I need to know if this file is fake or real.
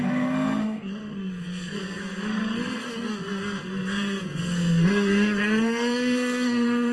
fake